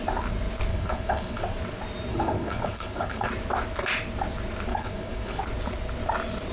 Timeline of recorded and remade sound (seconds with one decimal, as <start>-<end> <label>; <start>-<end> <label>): 0.0-0.7 recorded; 0.7-1.4 remade; 1.4-2.1 recorded; 2.1-3.3 remade; 3.3-4.7 recorded; 4.7-5.4 remade; 5.4-6.5 recorded